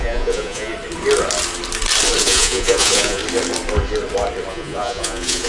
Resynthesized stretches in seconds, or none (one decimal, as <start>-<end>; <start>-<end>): 0.0-0.7; 2.2-3.2; 4.5-5.5